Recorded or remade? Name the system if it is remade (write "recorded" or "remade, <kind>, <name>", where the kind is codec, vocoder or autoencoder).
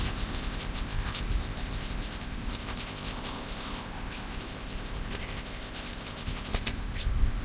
remade, codec, ZipCodec